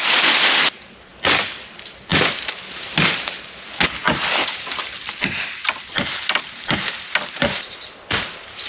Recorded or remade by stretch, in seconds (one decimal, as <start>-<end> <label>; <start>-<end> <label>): 0.0-8.7 recorded